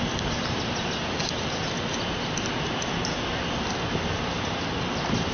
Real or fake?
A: real